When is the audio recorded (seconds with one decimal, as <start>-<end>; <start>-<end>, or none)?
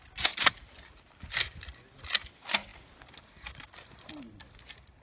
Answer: 0.0-5.0